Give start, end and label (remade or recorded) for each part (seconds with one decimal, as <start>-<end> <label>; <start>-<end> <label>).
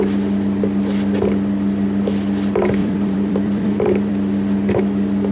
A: 0.0-2.8 recorded; 2.8-4.1 remade; 4.1-5.3 recorded